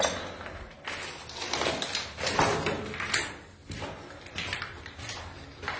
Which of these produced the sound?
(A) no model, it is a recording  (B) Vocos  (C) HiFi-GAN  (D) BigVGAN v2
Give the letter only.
A